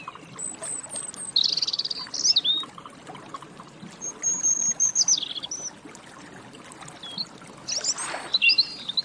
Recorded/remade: recorded